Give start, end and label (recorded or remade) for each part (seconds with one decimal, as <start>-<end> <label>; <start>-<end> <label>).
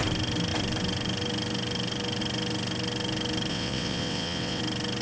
0.0-3.5 recorded; 3.5-4.6 remade; 4.6-5.0 recorded